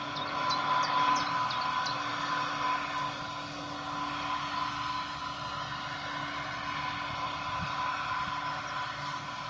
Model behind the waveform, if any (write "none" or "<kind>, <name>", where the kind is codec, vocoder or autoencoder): none